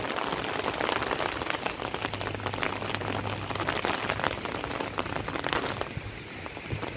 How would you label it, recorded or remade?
recorded